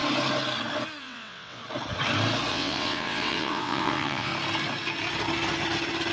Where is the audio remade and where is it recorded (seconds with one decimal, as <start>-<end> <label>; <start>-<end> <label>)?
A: 0.0-1.0 recorded; 1.0-1.6 remade; 1.6-2.5 recorded; 2.5-4.3 remade; 4.3-6.1 recorded

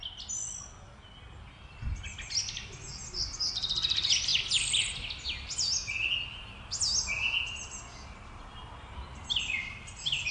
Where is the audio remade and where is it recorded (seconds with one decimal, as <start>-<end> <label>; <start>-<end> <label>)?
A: 0.0-8.5 recorded; 8.5-10.3 remade